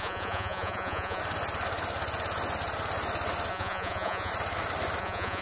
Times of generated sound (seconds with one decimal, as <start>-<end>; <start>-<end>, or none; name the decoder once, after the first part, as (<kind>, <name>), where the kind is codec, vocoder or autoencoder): 0.0-1.2 (vocoder, Vocos); 3.5-4.3; 5.0-5.4